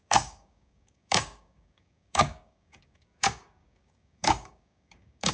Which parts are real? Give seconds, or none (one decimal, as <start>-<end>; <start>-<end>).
none